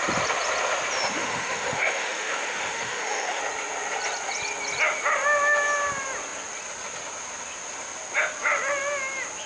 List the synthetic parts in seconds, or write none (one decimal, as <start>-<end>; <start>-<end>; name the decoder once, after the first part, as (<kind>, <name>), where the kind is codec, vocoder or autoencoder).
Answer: 1.2-3.4 (autoencoder, DAC-VAE)